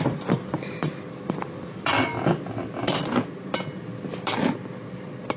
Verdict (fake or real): real